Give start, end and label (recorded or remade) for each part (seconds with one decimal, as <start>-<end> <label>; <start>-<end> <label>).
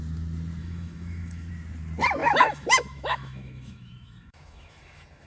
0.0-0.6 recorded; 0.6-1.5 remade; 1.5-2.2 recorded; 2.2-5.3 remade